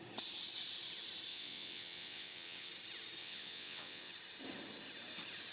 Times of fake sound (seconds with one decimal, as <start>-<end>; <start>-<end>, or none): 1.3-2.7; 3.2-4.1